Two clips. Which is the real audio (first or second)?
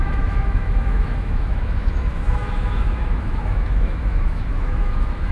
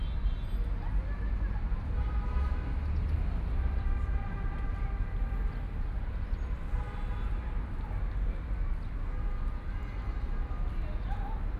second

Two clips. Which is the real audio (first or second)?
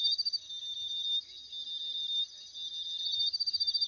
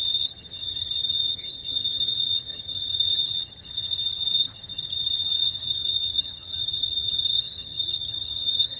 first